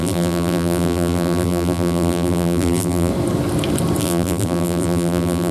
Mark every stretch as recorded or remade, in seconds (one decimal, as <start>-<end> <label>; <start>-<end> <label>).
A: 0.0-3.1 remade; 3.1-4.0 recorded; 4.0-5.5 remade